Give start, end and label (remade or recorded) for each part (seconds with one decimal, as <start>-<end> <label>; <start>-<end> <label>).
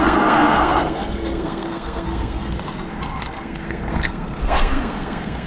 0.0-5.5 remade